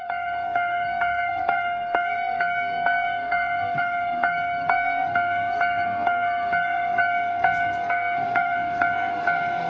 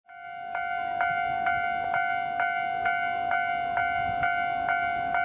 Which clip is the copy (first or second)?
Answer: first